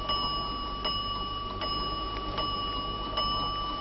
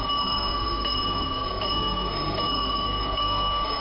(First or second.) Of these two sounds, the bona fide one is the first